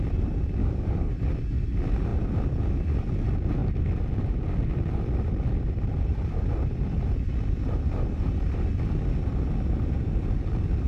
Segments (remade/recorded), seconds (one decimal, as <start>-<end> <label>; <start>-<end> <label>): 0.0-0.6 recorded; 0.6-1.1 remade; 1.1-10.9 recorded